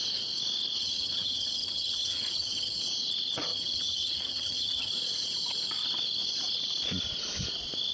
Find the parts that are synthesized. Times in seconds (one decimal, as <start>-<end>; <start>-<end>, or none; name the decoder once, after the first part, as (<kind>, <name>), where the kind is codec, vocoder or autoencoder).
0.8-2.8 (vocoder, HiFi-GAN); 3.5-4.9